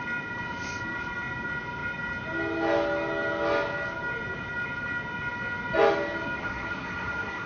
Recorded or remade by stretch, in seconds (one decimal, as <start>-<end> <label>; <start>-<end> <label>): 0.0-6.4 recorded; 6.4-7.5 remade

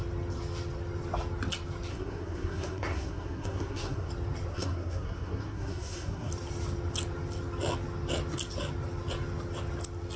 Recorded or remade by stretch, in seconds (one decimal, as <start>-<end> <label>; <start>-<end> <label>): 0.0-1.9 recorded; 1.9-4.1 remade; 4.1-4.5 recorded; 4.5-6.3 remade; 6.3-10.2 recorded

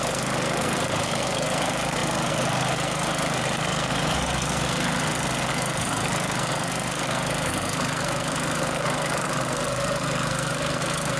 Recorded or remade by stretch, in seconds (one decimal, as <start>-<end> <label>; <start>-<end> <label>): 0.0-11.2 remade

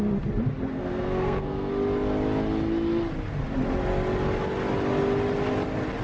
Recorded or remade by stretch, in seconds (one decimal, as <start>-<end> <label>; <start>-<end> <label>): 0.0-0.7 recorded; 0.7-1.7 remade; 1.7-6.0 recorded

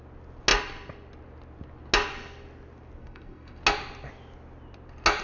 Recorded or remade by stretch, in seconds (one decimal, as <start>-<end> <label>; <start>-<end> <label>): 0.0-3.0 recorded; 3.0-3.6 remade; 3.6-5.2 recorded

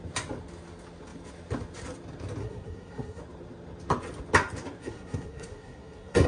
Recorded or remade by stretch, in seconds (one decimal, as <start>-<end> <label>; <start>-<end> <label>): 0.0-2.4 recorded; 2.4-3.2 remade; 3.2-4.8 recorded; 4.8-6.3 remade